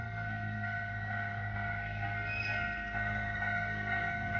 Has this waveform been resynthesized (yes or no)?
yes